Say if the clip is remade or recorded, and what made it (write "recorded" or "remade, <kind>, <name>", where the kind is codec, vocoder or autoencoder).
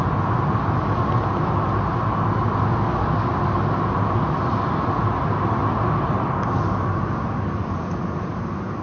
recorded